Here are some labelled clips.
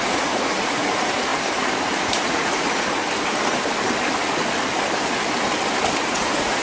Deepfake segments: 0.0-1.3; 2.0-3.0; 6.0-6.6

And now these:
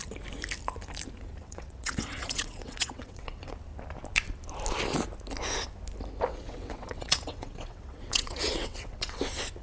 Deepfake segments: 1.4-3.5; 6.3-9.2